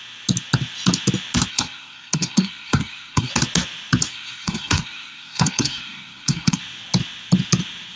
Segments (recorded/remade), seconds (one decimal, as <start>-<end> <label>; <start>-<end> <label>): 0.0-1.5 recorded; 1.5-3.3 remade; 3.3-4.1 recorded; 4.1-6.6 remade; 6.6-8.0 recorded